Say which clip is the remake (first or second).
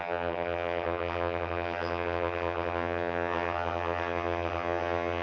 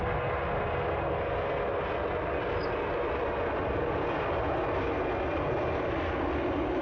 first